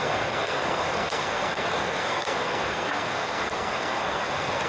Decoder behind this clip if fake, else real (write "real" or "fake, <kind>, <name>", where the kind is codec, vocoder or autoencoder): fake, codec, SNAC